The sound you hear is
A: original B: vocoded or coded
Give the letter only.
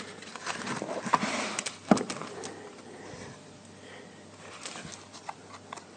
A